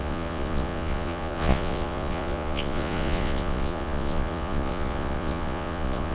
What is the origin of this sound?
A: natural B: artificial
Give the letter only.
B